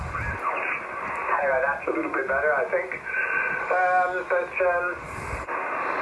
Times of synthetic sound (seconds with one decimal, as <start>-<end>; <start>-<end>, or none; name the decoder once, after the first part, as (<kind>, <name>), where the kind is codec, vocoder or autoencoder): none